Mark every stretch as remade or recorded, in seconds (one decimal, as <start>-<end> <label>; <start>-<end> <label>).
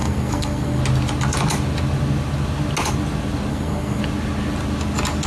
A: 0.0-0.8 remade; 0.8-3.5 recorded; 3.5-4.0 remade; 4.0-5.3 recorded